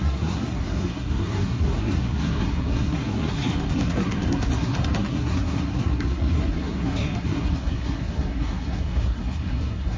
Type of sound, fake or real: fake